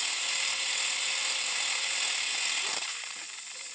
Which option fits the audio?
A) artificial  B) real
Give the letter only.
B